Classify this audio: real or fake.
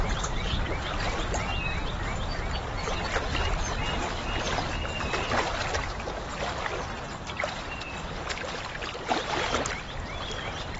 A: real